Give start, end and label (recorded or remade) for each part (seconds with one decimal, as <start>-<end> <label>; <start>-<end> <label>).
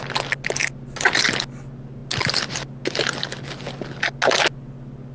0.0-5.1 recorded